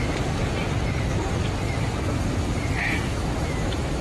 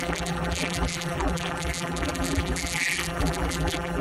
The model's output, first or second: second